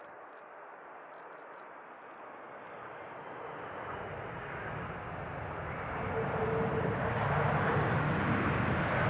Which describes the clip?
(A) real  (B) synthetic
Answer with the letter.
A